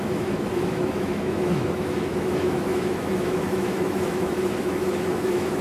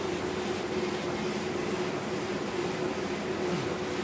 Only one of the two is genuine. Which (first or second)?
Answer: second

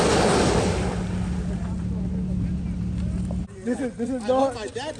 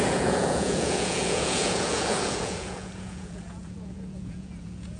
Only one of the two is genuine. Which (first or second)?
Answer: first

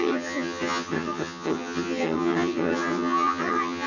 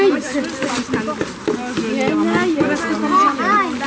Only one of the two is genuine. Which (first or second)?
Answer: second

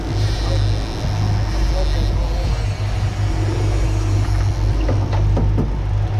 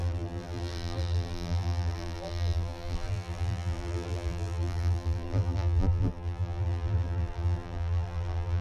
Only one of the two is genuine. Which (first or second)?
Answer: first